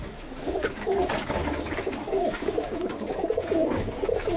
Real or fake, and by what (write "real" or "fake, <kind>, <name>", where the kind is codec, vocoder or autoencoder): fake, codec, DAC